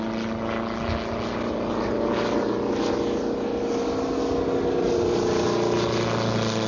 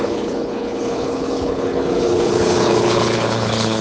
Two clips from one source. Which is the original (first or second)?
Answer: first